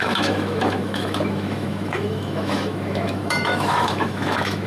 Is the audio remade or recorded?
remade